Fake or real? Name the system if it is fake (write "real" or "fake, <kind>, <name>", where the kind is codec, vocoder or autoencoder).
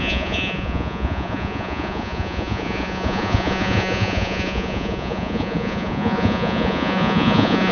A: fake, vocoder, Vocos